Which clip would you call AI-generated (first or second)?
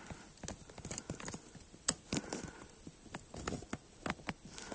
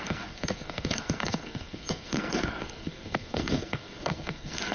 second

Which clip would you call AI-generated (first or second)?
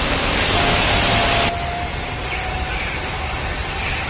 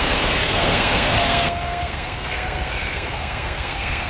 second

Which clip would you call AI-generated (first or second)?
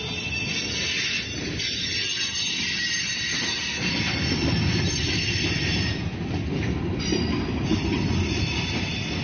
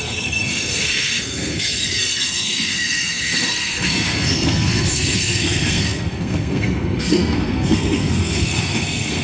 second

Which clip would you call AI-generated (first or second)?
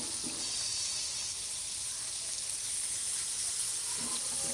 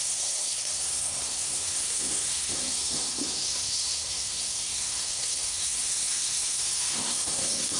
second